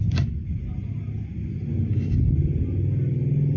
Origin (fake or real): real